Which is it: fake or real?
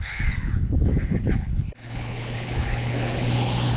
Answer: fake